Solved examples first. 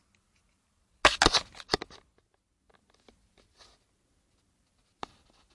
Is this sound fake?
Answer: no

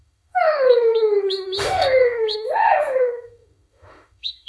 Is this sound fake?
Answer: yes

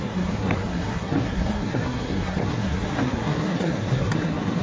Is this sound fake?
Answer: yes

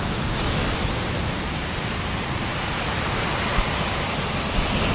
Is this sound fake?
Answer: no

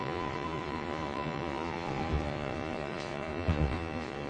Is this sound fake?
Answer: yes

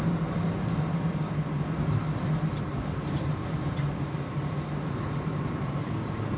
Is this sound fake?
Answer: no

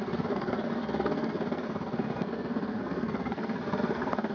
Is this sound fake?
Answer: yes